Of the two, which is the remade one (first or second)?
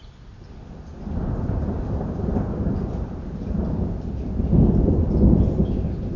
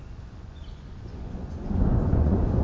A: second